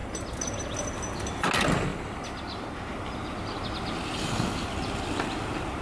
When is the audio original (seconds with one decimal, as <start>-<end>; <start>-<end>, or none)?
0.0-5.8

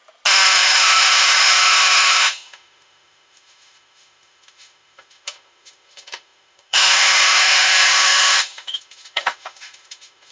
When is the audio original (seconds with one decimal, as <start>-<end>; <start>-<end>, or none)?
0.0-0.6

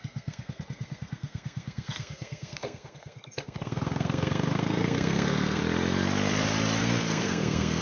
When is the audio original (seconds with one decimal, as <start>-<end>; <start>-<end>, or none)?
5.6-6.8

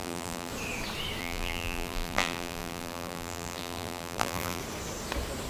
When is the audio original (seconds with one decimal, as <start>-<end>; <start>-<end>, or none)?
0.5-1.2; 4.6-5.5